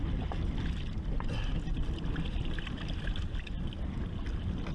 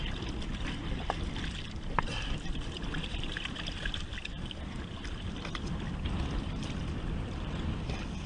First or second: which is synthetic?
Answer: second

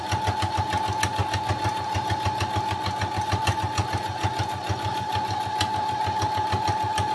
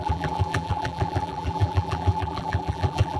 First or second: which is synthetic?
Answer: second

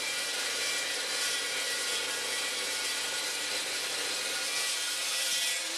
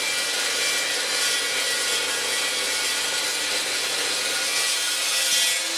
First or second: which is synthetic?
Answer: first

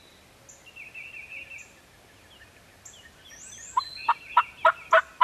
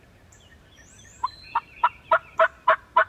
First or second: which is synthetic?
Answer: second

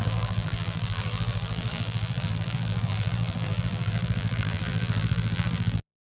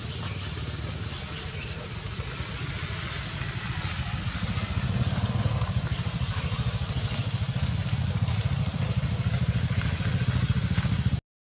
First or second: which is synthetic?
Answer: first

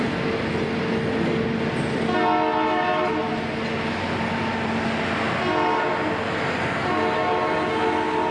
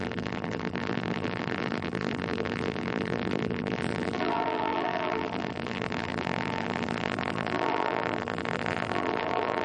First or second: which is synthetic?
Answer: second